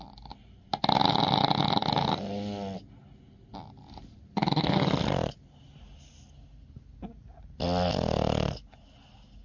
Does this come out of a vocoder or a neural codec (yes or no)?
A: no